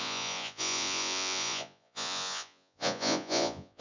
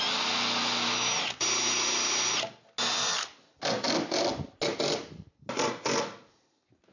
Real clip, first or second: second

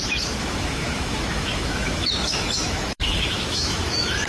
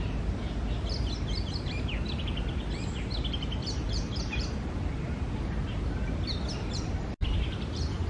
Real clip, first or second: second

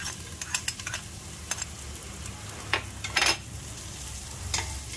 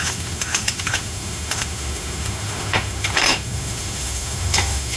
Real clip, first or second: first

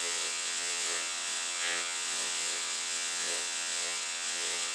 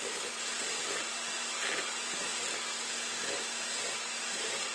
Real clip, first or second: second